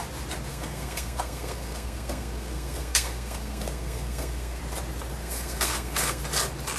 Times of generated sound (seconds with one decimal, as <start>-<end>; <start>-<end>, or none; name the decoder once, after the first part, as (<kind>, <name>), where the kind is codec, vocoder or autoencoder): 0.5-4.6 (codec, SNAC); 5.2-6.2